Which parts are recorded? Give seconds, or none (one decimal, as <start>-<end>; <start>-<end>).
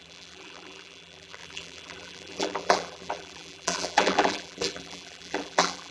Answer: none